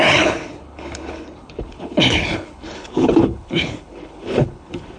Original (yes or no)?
no